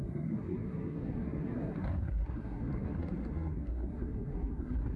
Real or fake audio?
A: fake